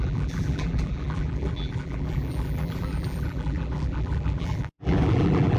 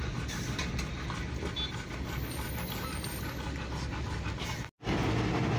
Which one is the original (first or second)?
second